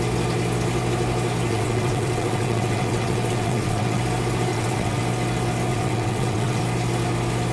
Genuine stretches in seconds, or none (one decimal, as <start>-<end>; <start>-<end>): 0.0-1.5; 4.0-4.5; 5.0-5.7; 6.6-7.5